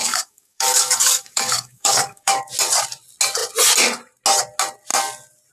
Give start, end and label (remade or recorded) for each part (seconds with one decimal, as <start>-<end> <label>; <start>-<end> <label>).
0.0-2.5 remade; 2.5-5.5 recorded